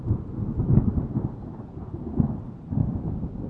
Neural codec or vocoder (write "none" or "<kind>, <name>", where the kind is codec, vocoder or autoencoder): vocoder, BigVGAN v2